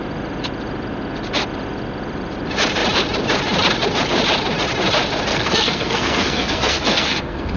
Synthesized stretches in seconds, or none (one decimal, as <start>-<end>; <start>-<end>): 5.3-7.6